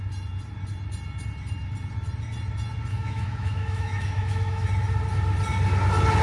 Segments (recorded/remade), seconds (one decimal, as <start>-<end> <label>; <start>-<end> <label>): 0.0-2.9 recorded; 2.9-4.7 remade; 4.7-6.2 recorded